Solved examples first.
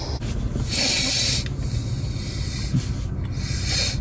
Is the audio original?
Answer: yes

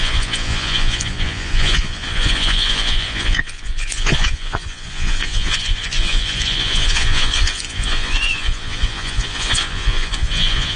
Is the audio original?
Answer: no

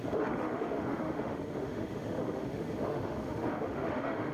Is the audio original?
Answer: no